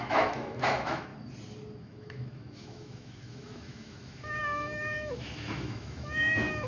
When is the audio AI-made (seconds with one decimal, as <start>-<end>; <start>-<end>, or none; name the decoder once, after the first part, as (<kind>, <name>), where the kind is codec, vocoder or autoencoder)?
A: 0.0-1.1 (autoencoder, DAC-VAE); 1.8-6.7